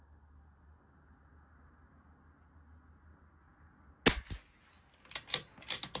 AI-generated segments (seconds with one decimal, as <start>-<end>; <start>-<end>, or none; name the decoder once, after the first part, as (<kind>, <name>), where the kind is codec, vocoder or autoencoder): none